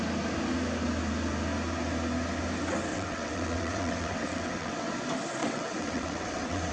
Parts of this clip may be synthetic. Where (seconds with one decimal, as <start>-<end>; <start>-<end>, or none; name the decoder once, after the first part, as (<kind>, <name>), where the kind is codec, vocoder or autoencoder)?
2.9-4.9 (vocoder, WaveNeXt); 5.4-6.7